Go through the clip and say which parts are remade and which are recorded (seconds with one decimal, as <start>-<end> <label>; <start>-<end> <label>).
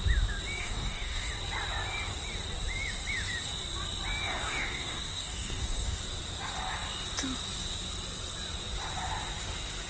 0.0-0.6 recorded; 0.6-1.3 remade; 1.3-4.2 recorded; 4.2-6.0 remade; 6.0-9.9 recorded